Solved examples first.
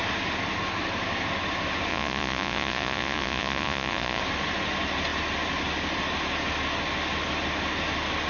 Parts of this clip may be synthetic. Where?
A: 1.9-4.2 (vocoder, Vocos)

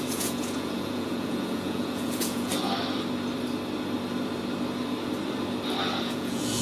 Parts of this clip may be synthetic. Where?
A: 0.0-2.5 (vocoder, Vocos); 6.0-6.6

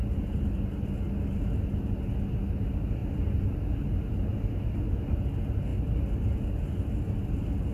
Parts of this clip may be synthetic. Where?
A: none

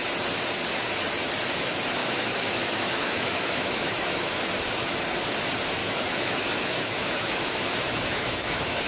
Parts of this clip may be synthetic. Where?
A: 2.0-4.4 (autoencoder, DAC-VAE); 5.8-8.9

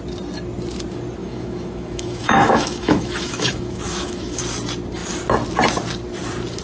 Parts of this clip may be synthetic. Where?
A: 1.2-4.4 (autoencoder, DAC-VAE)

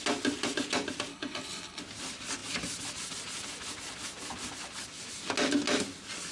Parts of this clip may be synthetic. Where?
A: 1.1-1.8 (codec, HILCodec)